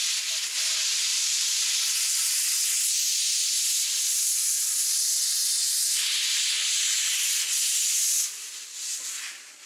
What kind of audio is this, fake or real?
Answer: real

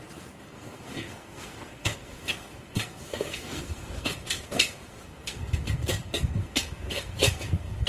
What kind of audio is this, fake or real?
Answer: fake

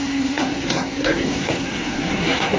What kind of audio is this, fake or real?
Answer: fake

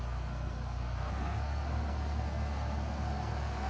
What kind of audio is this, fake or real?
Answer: fake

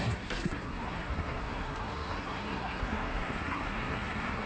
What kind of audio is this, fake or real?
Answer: fake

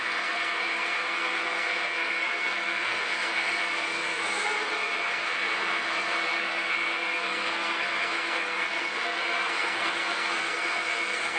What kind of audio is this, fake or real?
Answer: fake